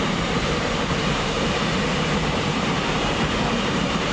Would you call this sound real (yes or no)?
no